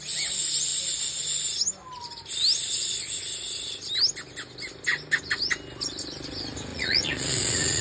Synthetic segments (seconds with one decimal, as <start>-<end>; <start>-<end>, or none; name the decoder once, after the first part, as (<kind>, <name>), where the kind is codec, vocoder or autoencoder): 6.7-7.8 (vocoder, Vocos)